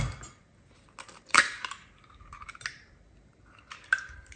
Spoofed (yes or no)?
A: no